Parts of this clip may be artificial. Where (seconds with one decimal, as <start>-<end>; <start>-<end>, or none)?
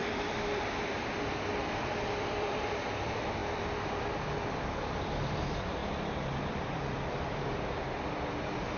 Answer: 0.0-3.4; 4.4-5.8; 6.4-8.8